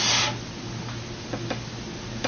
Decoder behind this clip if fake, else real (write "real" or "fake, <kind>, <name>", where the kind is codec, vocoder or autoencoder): real